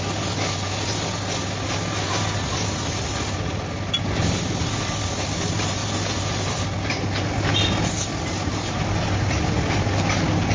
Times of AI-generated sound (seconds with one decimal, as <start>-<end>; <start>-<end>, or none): none

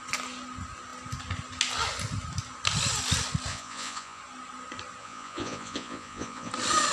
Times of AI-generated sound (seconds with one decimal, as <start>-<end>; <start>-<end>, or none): 3.5-4.2; 5.0-6.5

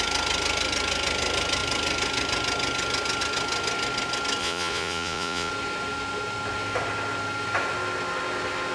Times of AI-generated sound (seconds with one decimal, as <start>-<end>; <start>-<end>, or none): 4.4-5.5

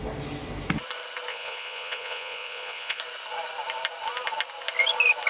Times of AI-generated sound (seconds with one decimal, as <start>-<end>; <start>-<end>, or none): 1.3-3.0

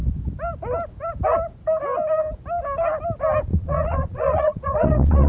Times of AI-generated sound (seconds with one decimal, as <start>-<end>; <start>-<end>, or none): 3.5-5.3

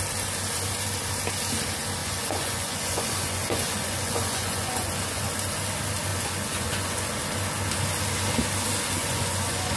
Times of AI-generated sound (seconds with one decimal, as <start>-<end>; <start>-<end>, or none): 2.0-5.3; 6.1-7.2; 9.0-9.8

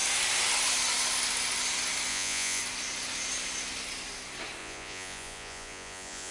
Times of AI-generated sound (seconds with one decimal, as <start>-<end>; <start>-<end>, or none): 2.1-2.6; 4.6-6.3

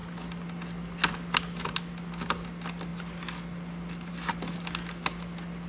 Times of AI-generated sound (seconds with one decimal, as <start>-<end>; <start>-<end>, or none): none